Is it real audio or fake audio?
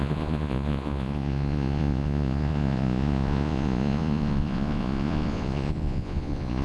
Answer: fake